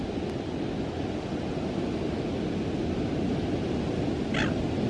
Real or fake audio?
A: real